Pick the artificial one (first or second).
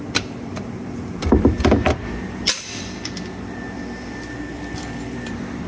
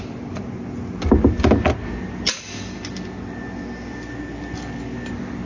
first